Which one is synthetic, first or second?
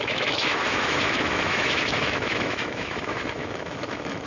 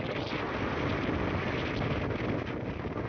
first